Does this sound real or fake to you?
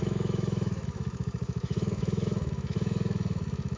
fake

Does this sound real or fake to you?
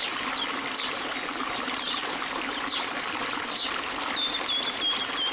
real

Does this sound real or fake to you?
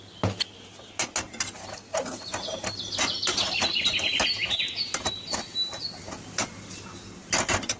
real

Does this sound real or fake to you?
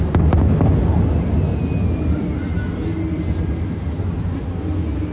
real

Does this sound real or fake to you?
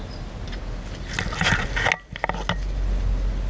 real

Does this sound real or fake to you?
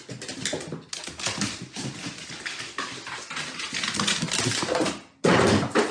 real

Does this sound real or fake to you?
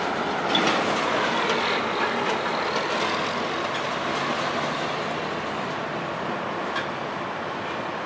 real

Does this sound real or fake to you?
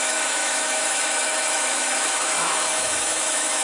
fake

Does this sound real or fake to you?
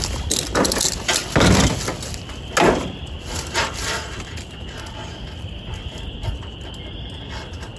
real